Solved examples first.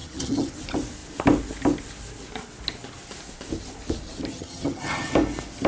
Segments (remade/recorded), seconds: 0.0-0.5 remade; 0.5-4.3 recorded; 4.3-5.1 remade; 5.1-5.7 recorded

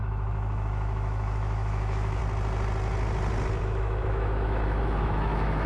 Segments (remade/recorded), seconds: 0.0-2.2 remade; 2.2-3.6 recorded; 3.6-5.7 remade